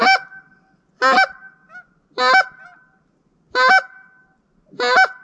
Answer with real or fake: real